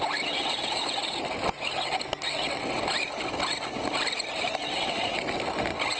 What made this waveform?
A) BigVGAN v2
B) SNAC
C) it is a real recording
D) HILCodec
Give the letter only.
C